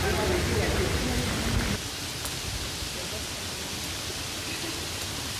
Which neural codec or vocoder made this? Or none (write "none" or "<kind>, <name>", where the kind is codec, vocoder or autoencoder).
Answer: none